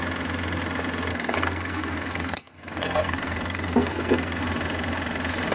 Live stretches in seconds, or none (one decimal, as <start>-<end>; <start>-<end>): 0.0-1.1; 4.4-5.5

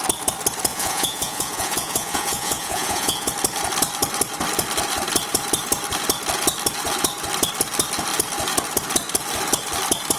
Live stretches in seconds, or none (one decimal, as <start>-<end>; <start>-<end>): 0.0-0.7; 3.3-10.2

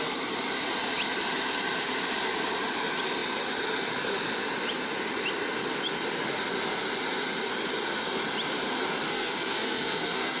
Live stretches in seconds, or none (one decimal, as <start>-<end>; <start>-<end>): 0.0-9.1

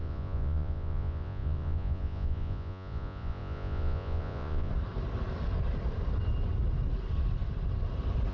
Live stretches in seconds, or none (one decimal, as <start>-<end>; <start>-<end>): 4.7-8.3

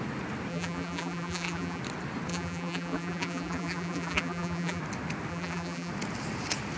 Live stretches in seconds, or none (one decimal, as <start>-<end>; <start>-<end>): 0.0-0.5; 1.8-2.3; 4.8-5.3; 5.9-6.8

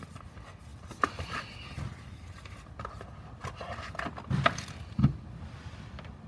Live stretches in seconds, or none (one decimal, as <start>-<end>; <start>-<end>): 0.0-6.3